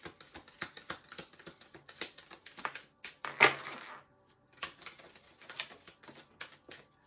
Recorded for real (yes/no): yes